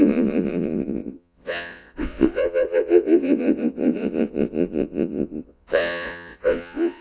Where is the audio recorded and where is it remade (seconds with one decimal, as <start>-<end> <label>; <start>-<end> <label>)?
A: 0.0-7.0 remade